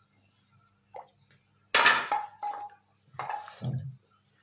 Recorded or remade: recorded